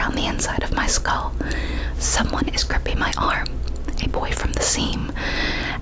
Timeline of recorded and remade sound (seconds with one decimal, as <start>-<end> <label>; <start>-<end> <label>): 0.0-5.8 recorded